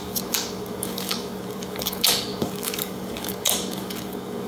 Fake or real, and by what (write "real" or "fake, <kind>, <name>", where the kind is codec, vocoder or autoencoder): fake, codec, DAC